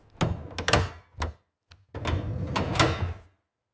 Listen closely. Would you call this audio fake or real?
real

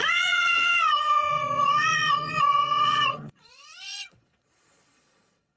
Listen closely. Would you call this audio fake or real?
fake